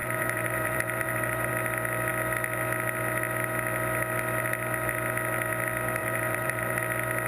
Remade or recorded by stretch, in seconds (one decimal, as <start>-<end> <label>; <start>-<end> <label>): 0.0-1.5 remade; 1.5-6.0 recorded; 6.0-6.8 remade; 6.8-7.3 recorded